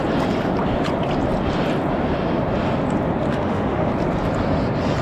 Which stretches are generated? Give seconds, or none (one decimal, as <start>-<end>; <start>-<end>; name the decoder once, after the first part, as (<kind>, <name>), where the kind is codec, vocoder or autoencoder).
3.3-3.9 (autoencoder, DAC-VAE)